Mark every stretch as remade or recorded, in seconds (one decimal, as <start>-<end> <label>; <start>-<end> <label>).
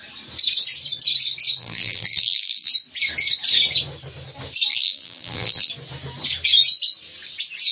0.0-1.6 recorded; 1.6-2.7 remade; 2.7-4.7 recorded; 4.7-5.7 remade; 5.7-7.7 recorded